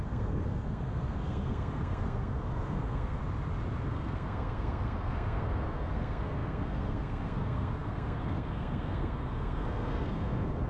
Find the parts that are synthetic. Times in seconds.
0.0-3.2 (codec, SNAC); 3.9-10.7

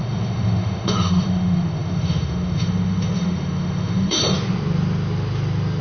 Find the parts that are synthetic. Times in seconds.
0.0-4.2 (autoencoder, DAC-VAE)